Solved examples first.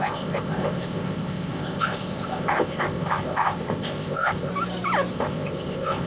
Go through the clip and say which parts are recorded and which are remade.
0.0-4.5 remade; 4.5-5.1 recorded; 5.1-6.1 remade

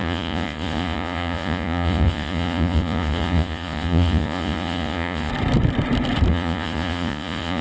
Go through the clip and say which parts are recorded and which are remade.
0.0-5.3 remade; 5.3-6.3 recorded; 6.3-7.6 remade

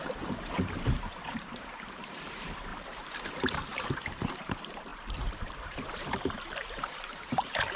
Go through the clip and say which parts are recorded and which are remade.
0.0-7.8 remade

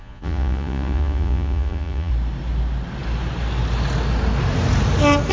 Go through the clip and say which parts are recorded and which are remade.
0.0-2.1 remade; 2.1-5.3 recorded

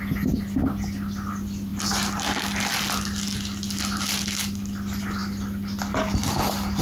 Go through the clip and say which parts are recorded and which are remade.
0.0-6.8 recorded